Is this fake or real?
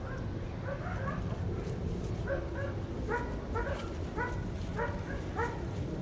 real